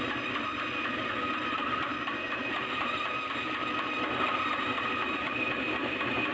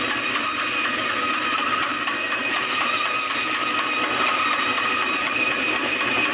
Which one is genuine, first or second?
second